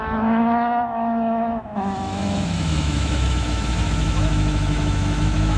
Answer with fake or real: fake